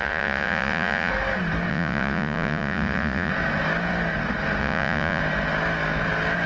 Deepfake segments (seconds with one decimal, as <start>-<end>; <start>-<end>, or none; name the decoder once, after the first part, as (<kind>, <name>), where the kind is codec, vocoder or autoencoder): 0.0-1.1 (vocoder, Vocos); 1.7-3.3; 4.6-5.2